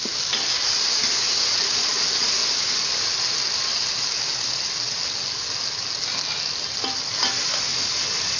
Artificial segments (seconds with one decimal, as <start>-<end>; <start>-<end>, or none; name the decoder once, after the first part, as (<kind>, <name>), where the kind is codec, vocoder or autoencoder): none